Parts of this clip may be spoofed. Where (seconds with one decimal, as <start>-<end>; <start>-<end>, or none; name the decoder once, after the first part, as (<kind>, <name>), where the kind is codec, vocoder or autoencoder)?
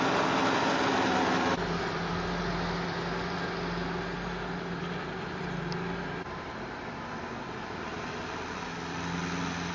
none